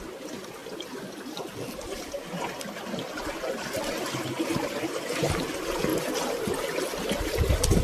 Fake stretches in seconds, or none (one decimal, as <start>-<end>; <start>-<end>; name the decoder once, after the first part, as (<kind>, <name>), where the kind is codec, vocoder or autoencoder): none